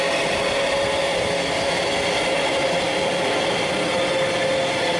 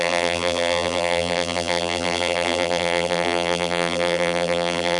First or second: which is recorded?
first